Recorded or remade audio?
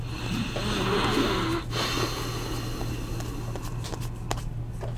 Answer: recorded